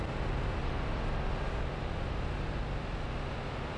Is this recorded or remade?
recorded